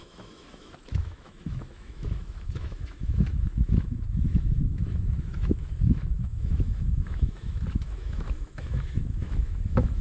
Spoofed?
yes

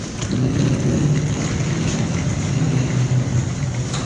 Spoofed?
no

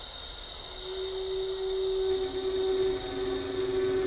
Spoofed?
no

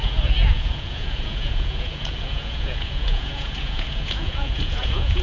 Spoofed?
yes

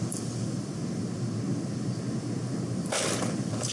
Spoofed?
no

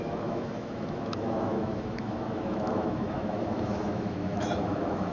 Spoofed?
yes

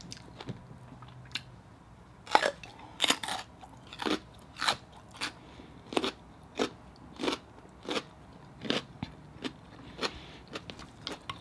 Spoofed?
no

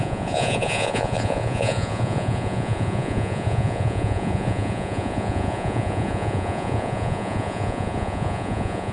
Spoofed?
yes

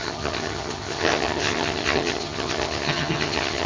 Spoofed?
yes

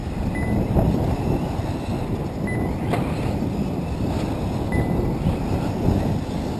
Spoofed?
no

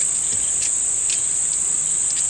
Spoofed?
no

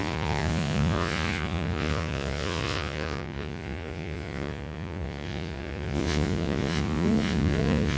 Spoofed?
yes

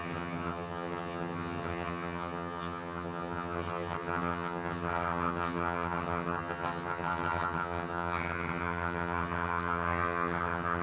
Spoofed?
yes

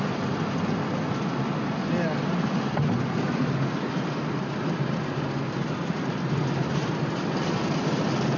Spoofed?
no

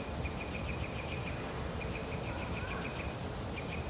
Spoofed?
yes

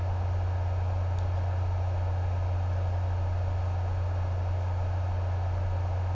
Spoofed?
no